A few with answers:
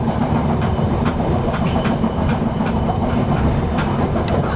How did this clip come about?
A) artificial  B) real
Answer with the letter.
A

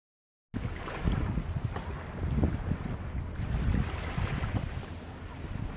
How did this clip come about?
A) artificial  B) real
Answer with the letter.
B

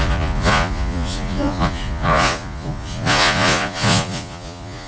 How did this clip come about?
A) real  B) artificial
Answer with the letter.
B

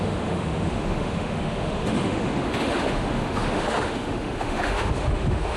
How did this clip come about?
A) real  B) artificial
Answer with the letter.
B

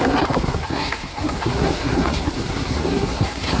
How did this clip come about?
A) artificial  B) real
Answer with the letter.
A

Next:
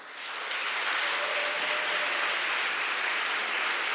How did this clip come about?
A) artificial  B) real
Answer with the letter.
B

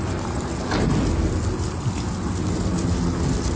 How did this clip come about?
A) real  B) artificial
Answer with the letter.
A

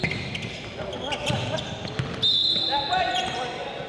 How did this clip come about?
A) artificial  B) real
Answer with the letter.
B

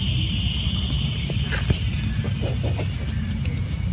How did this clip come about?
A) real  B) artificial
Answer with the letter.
A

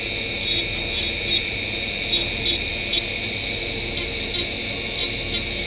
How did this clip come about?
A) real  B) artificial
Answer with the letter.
A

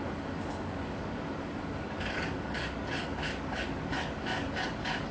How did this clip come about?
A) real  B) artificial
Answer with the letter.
B